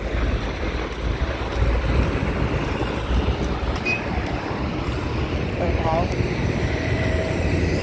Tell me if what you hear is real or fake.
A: fake